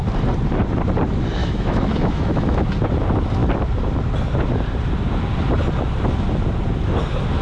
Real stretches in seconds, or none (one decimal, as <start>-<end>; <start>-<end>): 0.0-1.4; 2.7-7.4